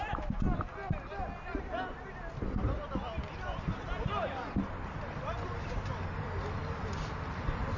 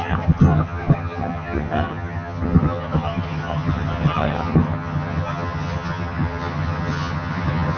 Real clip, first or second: first